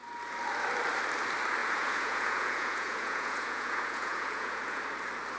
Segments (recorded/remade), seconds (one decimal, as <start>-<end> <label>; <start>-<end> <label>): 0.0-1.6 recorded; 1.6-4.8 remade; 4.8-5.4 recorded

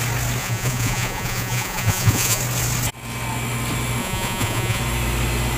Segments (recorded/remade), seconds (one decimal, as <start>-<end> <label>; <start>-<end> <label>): 0.0-0.4 recorded; 0.4-2.4 remade; 2.4-4.0 recorded; 4.0-4.8 remade; 4.8-5.6 recorded

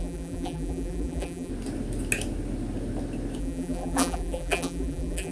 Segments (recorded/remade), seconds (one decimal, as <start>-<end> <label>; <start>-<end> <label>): 0.0-1.5 remade; 1.5-3.4 recorded; 3.4-5.3 remade

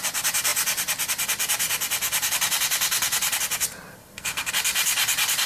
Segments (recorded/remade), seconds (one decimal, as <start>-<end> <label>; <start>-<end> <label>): 0.0-4.0 recorded; 4.0-4.5 remade; 4.5-5.5 recorded

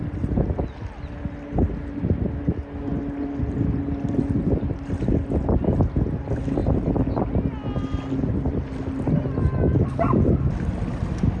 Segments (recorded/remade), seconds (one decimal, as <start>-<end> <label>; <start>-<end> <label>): 0.0-6.6 recorded; 6.6-7.3 remade; 7.3-11.4 recorded

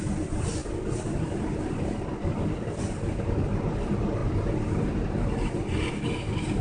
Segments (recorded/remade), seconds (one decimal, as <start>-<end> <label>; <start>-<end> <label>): 0.0-6.6 recorded

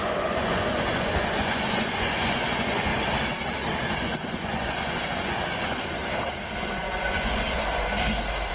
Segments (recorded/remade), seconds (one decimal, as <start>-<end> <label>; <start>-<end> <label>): 0.0-2.9 remade; 2.9-4.0 recorded; 4.0-6.0 remade; 6.0-6.6 recorded; 6.6-7.9 remade; 7.9-8.5 recorded

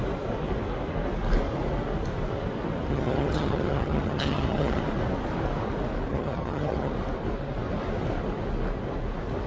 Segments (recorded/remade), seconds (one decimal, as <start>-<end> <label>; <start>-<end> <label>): 0.0-2.9 recorded; 2.9-4.8 remade; 4.8-6.1 recorded; 6.1-6.9 remade; 6.9-9.5 recorded